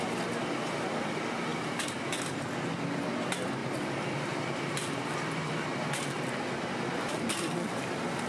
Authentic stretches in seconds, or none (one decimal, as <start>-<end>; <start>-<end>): 0.0-3.6; 6.5-8.3